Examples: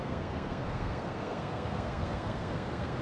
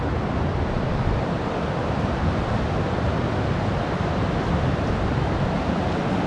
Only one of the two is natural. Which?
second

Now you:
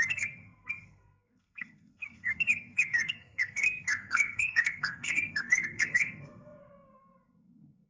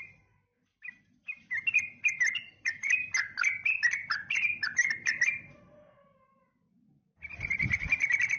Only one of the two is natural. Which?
second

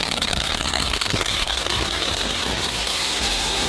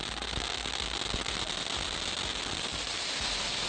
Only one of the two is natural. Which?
second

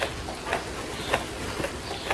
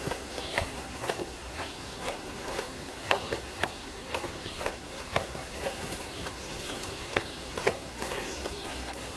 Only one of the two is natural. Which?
first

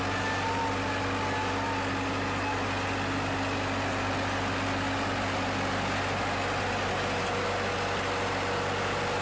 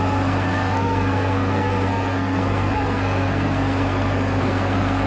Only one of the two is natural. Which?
first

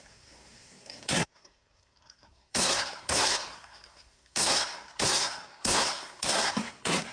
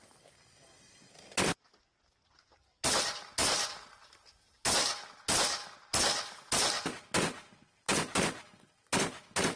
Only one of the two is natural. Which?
second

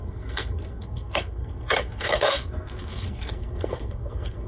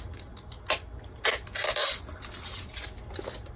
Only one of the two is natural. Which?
second